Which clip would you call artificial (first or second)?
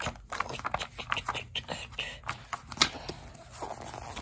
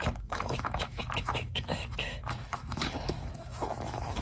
second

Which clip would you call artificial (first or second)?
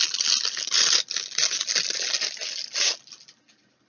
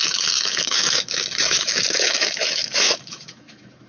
second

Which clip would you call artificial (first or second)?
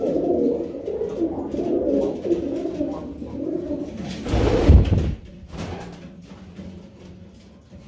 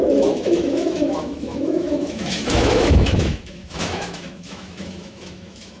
second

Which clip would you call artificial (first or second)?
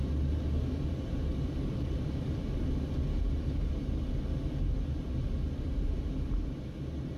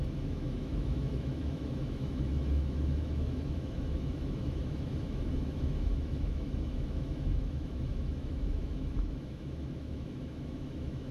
second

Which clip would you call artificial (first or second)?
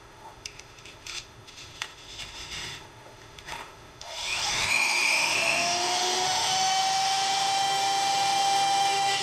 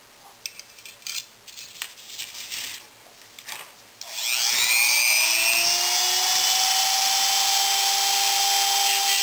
first